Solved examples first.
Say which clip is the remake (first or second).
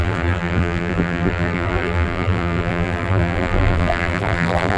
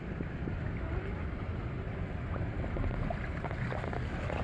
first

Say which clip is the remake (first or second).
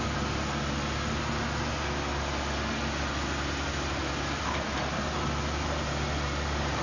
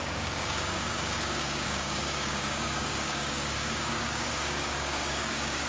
second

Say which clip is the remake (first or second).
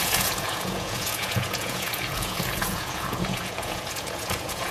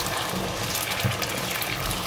first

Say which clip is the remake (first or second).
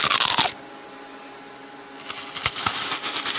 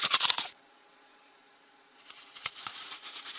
second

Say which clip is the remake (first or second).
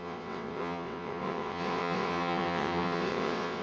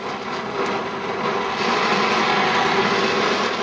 first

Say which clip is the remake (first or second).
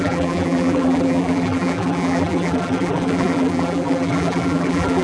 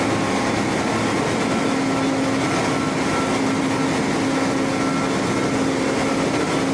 first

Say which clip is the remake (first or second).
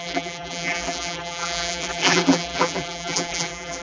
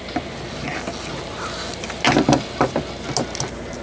first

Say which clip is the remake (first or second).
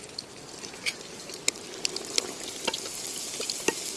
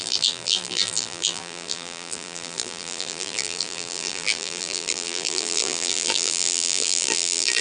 second